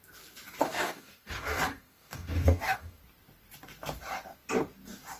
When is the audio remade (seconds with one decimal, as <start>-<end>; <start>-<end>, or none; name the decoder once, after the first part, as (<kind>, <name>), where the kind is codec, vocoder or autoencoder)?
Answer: 0.6-3.0 (codec, DAC)